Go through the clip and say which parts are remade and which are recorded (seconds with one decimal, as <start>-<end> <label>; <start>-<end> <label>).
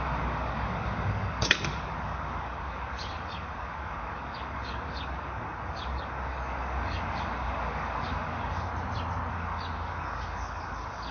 0.0-8.7 remade; 8.7-9.3 recorded; 9.3-11.1 remade